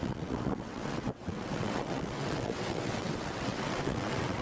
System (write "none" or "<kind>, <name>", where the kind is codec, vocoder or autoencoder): vocoder, WaveNeXt